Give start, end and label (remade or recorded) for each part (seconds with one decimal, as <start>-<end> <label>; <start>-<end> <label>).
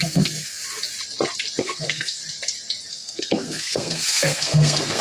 0.0-0.6 remade; 0.6-1.6 recorded; 1.6-2.2 remade; 2.2-2.9 recorded; 2.9-5.0 remade